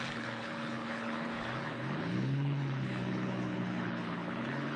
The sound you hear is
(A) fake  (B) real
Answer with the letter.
A